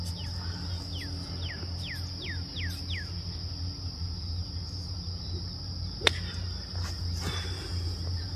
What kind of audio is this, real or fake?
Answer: real